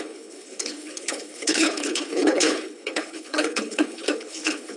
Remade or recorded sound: remade